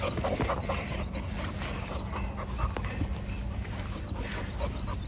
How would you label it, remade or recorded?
recorded